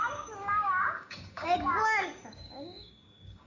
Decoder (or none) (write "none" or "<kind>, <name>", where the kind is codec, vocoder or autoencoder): codec, DAC